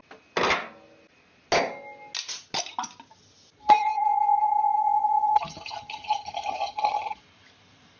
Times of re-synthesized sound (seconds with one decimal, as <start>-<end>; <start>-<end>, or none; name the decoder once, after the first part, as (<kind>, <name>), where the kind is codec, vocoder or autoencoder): 3.6-7.2 (vocoder, HiFi-GAN)

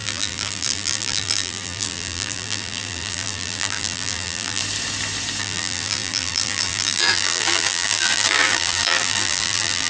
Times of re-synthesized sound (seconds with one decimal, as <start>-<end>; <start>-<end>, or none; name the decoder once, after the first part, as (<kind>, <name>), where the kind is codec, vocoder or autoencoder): 0.0-4.6 (vocoder, BigVGAN v2); 5.4-9.9

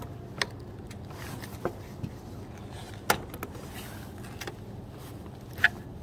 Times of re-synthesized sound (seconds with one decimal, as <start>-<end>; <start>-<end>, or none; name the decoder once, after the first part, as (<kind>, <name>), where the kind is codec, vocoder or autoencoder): none

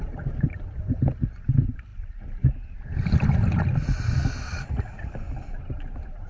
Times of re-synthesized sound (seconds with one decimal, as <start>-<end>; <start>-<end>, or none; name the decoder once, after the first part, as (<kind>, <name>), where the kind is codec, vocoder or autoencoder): 4.5-5.1 (vocoder, Vocos)